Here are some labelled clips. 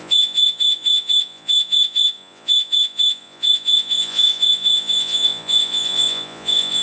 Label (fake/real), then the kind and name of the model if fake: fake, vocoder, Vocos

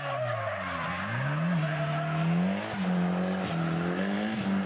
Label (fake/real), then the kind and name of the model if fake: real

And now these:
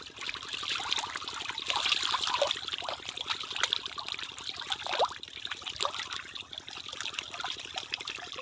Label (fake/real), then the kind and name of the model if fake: real